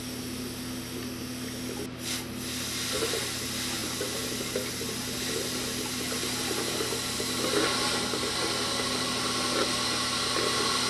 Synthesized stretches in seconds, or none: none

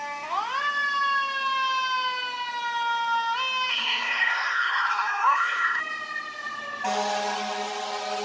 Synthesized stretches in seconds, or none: 3.7-5.8

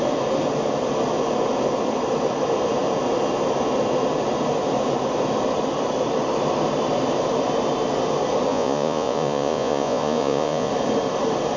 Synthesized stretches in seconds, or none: 8.5-10.7